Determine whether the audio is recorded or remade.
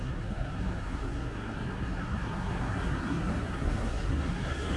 remade